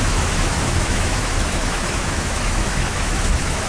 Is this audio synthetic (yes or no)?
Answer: yes